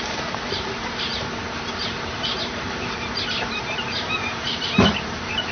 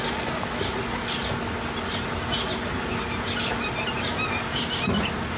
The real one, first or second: second